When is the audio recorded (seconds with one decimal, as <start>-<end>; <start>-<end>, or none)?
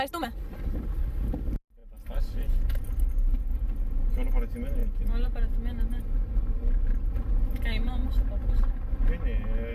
0.0-9.7